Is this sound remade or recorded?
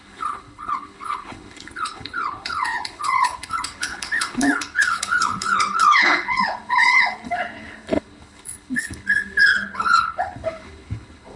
remade